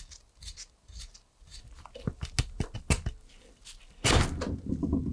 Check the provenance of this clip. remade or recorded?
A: recorded